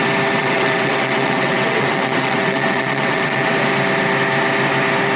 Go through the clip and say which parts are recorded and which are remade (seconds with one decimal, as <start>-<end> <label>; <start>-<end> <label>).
0.0-0.4 recorded; 0.4-3.5 remade; 3.5-5.2 recorded